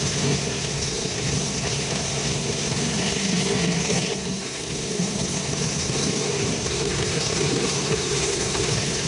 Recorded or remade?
remade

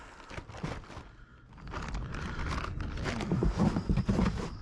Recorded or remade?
recorded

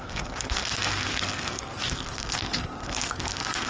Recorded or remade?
remade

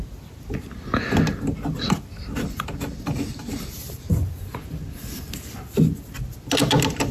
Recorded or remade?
recorded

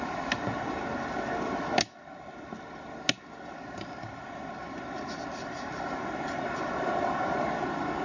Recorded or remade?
recorded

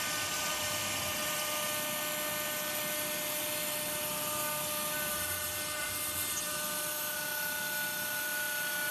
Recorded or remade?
recorded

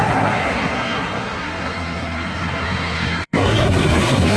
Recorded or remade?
remade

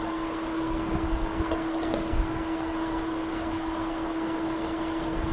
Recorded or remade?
remade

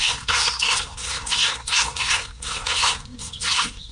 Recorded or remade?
remade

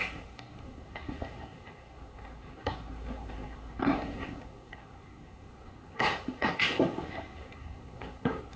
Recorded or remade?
remade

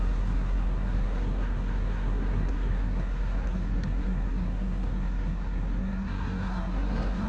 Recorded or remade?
remade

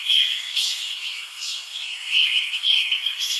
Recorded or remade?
remade